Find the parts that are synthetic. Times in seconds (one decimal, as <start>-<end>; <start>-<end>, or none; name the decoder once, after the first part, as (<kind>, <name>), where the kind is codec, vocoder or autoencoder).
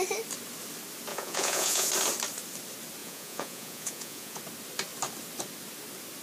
1.1-1.9 (vocoder, Vocos); 3.0-4.4